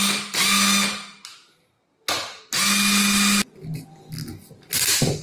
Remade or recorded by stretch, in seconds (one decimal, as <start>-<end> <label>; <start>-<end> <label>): 0.0-5.2 recorded